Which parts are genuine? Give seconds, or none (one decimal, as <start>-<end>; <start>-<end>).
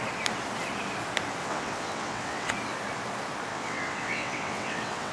0.0-1.4; 2.5-3.5